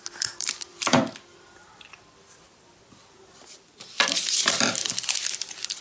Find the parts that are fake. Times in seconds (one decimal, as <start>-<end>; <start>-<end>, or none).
none